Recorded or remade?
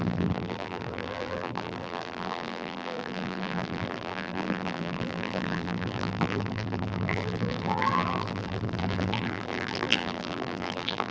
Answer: remade